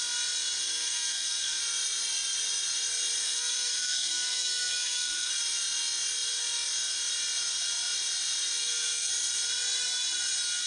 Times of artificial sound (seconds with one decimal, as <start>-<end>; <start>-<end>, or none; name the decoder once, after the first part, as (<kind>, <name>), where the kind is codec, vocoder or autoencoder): 0.6-1.6 (codec, SNAC); 3.2-5.3; 8.6-9.1

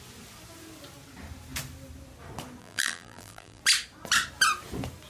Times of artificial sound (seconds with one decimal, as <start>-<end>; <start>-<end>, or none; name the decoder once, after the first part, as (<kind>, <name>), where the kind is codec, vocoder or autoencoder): 2.6-3.6 (vocoder, BigVGAN v2)

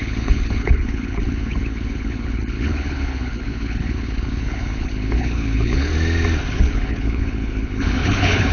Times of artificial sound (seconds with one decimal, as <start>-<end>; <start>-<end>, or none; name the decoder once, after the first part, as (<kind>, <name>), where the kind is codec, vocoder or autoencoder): 0.0-5.9 (codec, HILCodec); 6.5-8.5

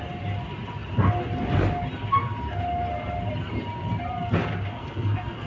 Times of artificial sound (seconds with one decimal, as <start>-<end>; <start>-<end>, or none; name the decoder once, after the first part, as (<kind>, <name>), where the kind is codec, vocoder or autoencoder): 4.7-5.5 (codec, SNAC)

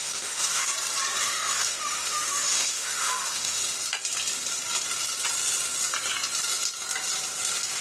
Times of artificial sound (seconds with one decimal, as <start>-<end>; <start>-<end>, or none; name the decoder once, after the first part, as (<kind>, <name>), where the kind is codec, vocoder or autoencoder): 0.0-0.7 (autoencoder, DAC-VAE); 1.2-3.6

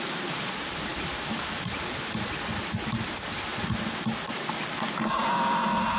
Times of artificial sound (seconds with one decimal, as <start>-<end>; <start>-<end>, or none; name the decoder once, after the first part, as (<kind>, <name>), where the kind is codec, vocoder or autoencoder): none